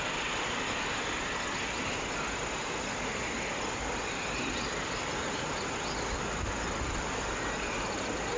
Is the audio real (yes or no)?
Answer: yes